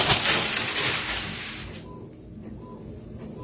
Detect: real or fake real